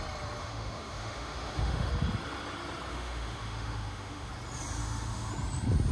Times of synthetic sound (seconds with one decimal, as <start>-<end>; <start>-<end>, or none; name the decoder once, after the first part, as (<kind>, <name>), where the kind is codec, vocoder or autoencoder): 0.4-1.9 (autoencoder, DAC-VAE); 2.9-4.3; 4.8-5.3